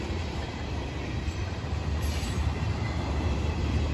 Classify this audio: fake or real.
fake